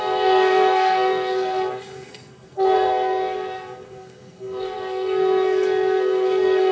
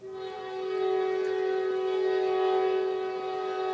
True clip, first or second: second